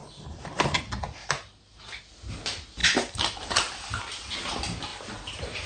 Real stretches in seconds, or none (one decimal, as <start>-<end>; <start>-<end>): 0.0-1.2; 2.0-2.8; 4.0-5.7